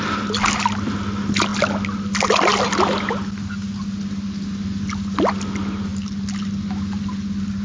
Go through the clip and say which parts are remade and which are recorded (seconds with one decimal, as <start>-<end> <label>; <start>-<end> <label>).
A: 0.0-7.6 recorded